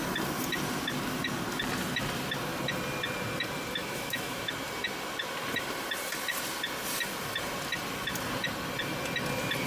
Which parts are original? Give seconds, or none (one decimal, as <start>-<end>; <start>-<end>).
0.0-3.8; 4.5-9.7

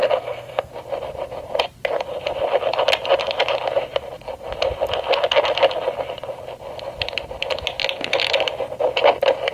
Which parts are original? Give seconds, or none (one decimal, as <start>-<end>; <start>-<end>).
0.7-9.5

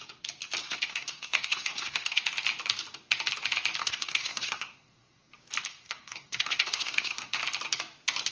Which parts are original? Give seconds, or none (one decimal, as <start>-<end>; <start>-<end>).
0.0-0.6; 2.2-3.8; 5.3-5.7; 7.4-8.3

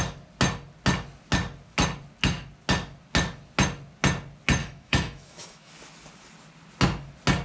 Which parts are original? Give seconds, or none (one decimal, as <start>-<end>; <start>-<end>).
0.0-4.6; 5.7-7.4

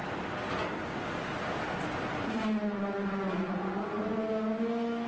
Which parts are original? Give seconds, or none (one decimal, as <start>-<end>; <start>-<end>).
0.0-2.2; 4.0-5.1

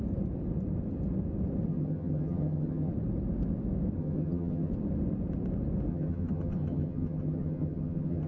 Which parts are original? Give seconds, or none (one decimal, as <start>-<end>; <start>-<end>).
0.0-1.7; 2.9-4.0; 4.7-5.9

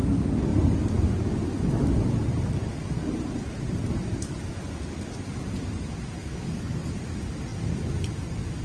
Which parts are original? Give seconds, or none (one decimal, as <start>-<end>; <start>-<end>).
0.0-6.2; 6.9-8.6